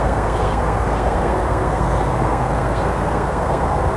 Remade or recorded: remade